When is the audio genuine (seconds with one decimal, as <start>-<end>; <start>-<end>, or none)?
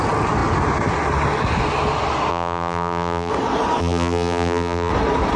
0.0-2.3; 3.3-3.8; 4.9-5.4